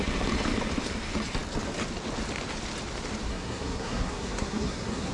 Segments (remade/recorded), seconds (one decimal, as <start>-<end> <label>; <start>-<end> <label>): 0.0-3.3 recorded; 3.3-5.1 remade